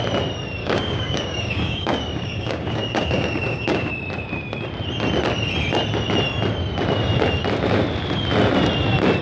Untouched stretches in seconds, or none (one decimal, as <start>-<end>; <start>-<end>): 0.0-0.6; 3.9-9.2